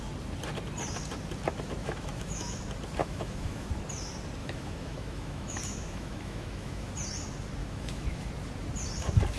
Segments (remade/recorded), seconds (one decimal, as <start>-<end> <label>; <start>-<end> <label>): 0.0-1.8 recorded; 1.8-2.6 remade; 2.6-3.0 recorded; 3.0-3.7 remade; 3.7-4.4 recorded; 4.4-6.9 remade; 6.9-7.6 recorded; 7.6-8.3 remade; 8.3-9.4 recorded